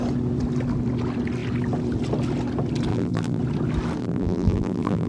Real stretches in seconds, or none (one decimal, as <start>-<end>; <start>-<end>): 0.0-2.9; 3.4-4.0